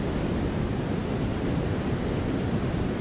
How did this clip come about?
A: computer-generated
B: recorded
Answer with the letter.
B